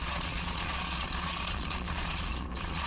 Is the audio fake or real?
fake